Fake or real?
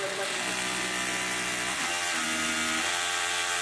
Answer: real